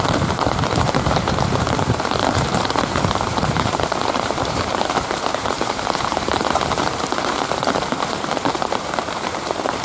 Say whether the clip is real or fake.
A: fake